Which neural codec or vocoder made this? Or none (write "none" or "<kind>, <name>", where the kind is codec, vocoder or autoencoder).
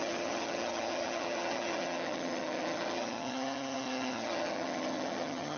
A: vocoder, HiFi-GAN